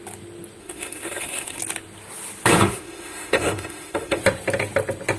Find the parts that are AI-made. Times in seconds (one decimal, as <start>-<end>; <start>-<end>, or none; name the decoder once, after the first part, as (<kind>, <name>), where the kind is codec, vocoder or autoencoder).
0.6-1.6 (autoencoder, DAC-VAE); 2.5-4.2